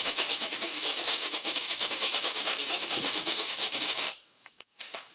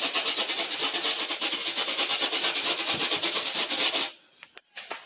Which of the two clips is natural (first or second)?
second